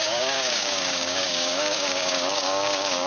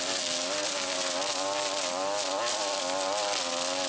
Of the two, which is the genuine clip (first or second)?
second